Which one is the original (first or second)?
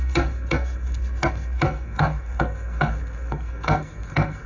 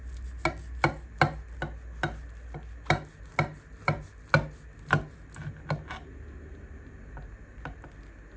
second